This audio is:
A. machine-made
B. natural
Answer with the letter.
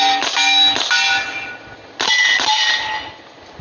B